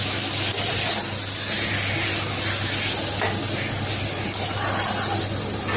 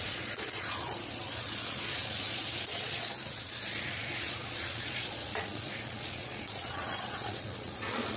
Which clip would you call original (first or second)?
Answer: first